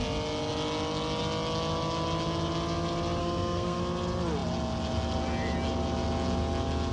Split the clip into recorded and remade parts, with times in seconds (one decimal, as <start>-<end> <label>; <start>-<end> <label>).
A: 0.0-3.2 recorded; 3.2-3.8 remade; 3.8-6.9 recorded